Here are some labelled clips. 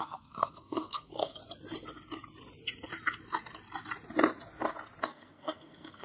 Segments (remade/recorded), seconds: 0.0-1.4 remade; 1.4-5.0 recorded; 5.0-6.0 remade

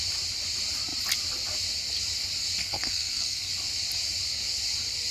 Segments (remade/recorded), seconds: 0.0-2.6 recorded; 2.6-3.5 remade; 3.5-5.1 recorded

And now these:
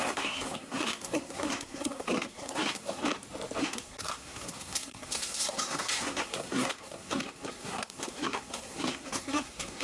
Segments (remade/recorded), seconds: 0.0-3.0 remade; 3.0-3.6 recorded; 3.6-9.8 remade